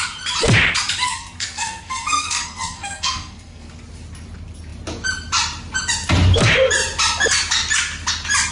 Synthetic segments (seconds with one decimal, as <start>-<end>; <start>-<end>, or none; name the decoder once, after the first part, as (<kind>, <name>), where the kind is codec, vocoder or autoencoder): 1.0-3.7 (codec, SNAC)